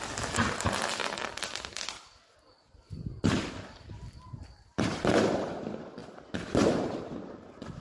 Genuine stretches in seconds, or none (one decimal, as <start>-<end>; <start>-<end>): 0.0-1.0; 5.1-7.8